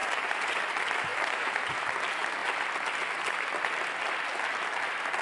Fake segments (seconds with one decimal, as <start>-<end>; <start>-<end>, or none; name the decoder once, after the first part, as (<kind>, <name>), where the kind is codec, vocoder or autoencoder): 0.0-0.6 (vocoder, BigVGAN v2); 1.1-1.7